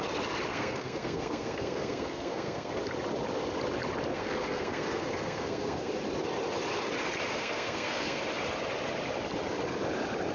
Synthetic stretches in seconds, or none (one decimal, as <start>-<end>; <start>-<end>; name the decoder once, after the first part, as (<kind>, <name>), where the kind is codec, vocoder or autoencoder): 0.5-2.8 (codec, SNAC); 4.1-5.9; 7.3-8.2